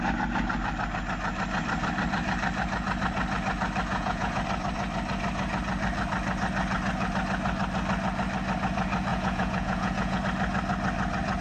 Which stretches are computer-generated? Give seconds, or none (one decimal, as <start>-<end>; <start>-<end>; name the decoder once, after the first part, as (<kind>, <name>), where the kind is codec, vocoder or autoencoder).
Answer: 3.9-4.4 (vocoder, Vocos); 9.1-10.2